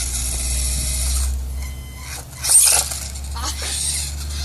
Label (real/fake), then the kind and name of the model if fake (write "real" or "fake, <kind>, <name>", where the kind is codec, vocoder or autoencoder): real